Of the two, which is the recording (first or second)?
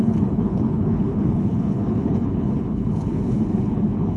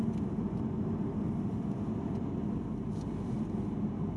second